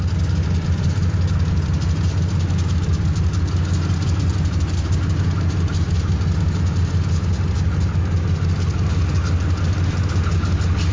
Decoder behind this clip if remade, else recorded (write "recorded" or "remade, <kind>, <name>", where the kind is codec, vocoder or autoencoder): recorded